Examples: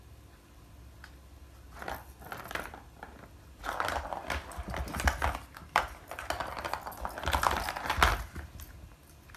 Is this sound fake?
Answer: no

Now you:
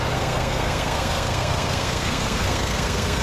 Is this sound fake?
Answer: yes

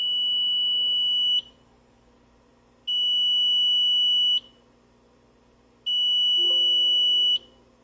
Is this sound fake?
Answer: no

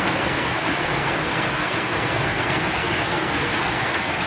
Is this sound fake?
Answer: yes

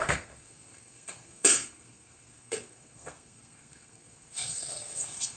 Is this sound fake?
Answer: yes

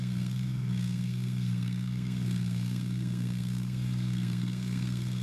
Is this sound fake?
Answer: yes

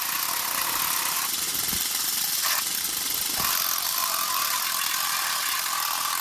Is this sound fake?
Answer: no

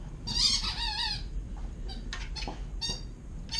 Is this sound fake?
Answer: no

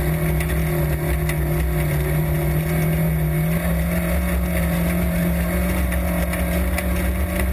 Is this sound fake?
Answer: no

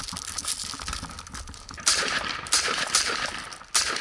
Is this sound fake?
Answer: no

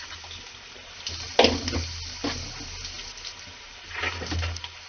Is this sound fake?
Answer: no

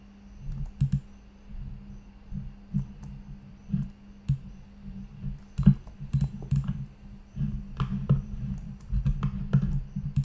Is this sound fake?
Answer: no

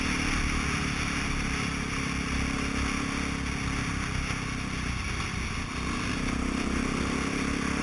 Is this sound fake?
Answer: no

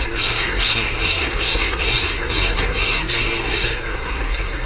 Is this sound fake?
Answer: yes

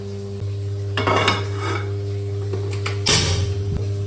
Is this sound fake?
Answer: no